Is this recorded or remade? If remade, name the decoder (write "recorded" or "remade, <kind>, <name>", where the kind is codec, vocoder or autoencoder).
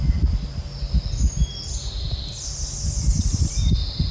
recorded